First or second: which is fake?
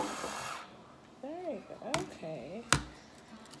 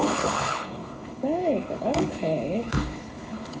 second